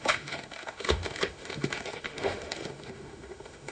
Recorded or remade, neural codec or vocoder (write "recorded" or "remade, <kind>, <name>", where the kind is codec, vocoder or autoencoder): remade, autoencoder, DAC-VAE